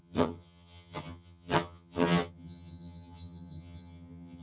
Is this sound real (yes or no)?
no